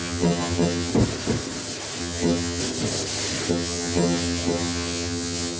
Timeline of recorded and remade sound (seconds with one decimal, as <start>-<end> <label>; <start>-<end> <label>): 0.0-0.9 remade; 0.9-2.0 recorded; 2.0-2.6 remade; 2.6-3.5 recorded; 3.5-5.6 remade